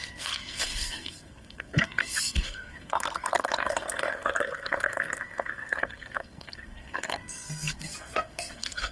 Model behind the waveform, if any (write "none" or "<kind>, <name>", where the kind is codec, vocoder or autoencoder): codec, SNAC